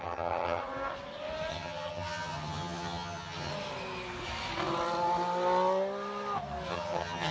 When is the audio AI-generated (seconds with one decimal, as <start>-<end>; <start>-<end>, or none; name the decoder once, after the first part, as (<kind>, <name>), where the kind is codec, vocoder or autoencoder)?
0.0-0.6 (vocoder, HiFi-GAN); 1.5-3.5; 6.7-7.3